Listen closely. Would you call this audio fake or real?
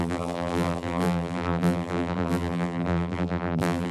fake